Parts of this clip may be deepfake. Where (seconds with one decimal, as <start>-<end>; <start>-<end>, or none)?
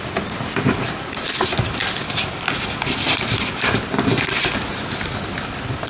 none